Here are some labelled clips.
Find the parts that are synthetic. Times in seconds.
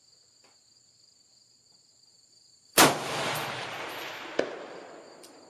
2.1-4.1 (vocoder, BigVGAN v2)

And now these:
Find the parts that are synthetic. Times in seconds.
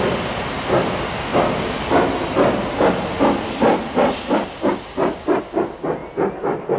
none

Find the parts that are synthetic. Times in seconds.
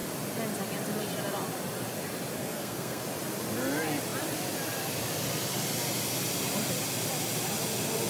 2.4-3.0 (codec, SNAC)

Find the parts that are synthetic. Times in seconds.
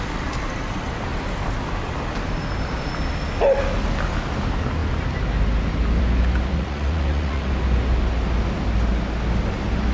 6.5-7.5 (vocoder, Vocos)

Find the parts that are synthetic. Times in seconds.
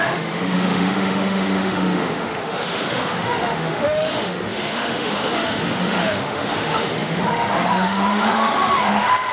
0.0-9.3 (autoencoder, DAC-VAE)